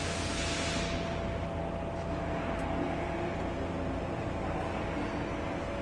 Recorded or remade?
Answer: recorded